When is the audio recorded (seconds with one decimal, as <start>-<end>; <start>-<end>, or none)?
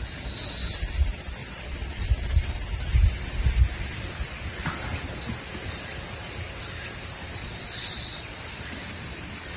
0.0-1.4; 2.0-7.4; 8.4-9.6